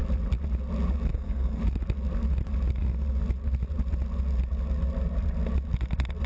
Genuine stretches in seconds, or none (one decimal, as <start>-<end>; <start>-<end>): 0.0-1.1; 1.6-6.3